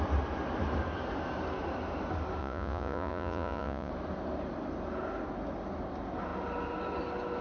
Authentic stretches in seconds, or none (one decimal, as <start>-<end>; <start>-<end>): 0.0-2.4; 3.9-7.4